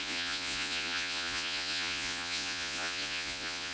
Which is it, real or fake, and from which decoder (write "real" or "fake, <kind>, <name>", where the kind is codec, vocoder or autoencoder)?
fake, vocoder, Vocos